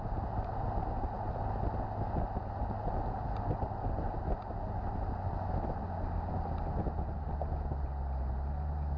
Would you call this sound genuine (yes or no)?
yes